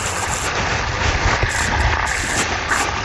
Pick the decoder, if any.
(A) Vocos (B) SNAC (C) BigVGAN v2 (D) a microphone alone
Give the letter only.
D